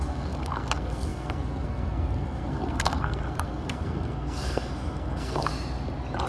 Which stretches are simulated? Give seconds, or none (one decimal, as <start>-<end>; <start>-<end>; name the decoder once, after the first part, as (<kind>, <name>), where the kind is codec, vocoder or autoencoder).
0.0-5.5 (codec, SNAC)